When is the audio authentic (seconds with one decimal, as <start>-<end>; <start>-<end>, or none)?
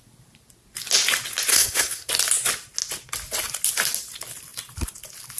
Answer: 0.0-1.5; 2.1-5.4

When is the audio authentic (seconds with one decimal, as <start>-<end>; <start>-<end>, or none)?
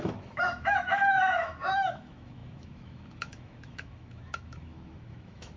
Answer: none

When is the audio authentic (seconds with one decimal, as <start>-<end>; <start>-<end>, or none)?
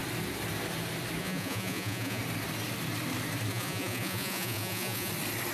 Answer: 0.0-1.2; 2.2-3.5; 5.1-5.5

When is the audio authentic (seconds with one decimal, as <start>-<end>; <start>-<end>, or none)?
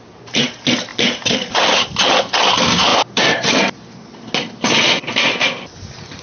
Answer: 0.0-0.9; 2.2-2.9; 3.5-6.2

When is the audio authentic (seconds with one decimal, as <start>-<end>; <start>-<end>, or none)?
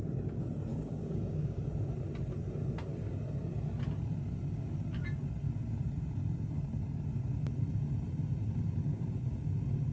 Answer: 0.0-0.7; 1.6-9.9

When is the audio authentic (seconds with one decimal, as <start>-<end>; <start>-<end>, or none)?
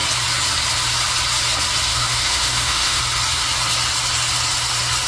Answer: 0.0-1.9; 3.0-5.1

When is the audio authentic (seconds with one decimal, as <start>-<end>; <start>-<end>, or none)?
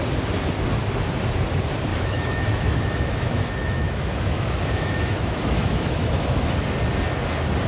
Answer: 0.0-1.9; 6.5-7.7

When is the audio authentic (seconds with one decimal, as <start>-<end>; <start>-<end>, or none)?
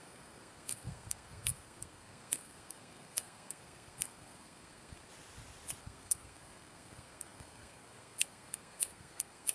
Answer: 5.1-5.8